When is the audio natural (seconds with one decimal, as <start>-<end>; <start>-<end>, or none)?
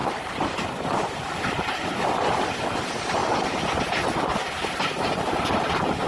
2.5-3.2; 4.8-6.1